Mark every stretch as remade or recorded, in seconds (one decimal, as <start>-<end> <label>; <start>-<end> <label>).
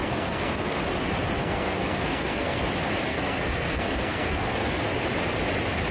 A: 0.0-0.8 remade; 0.8-1.4 recorded; 1.4-2.6 remade; 2.6-3.1 recorded; 3.1-4.8 remade; 4.8-5.9 recorded